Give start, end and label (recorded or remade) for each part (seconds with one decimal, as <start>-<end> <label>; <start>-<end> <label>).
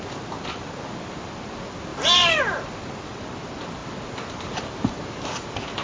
0.0-5.8 recorded